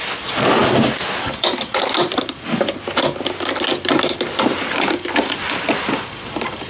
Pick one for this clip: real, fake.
real